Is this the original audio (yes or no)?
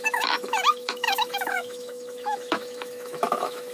no